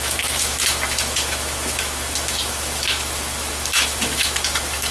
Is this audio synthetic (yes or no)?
yes